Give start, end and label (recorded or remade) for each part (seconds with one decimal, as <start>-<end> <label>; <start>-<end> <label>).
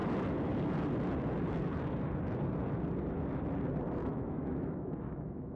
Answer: 0.0-4.0 recorded; 4.0-5.6 remade